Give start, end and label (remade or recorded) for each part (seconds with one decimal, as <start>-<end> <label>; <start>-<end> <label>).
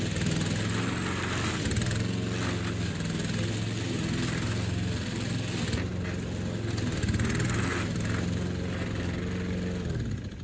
0.0-10.4 recorded